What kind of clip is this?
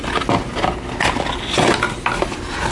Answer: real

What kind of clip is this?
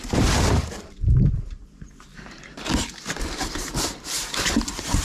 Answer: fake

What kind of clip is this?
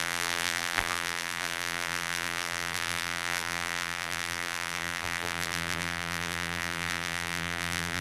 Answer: fake